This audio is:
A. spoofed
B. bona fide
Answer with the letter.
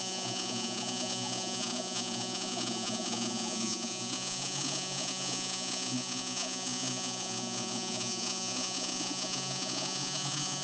A